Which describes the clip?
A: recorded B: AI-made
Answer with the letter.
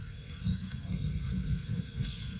B